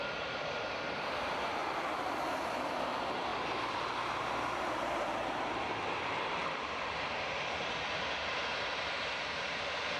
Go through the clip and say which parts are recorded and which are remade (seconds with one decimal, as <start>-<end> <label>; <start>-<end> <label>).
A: 0.0-1.6 remade; 1.6-2.8 recorded; 2.8-3.3 remade; 3.3-4.2 recorded; 4.2-10.0 remade